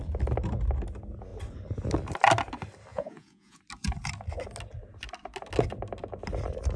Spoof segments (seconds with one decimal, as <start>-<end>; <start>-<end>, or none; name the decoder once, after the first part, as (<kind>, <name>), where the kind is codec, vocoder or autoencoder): 2.9-3.6 (vocoder, Vocos)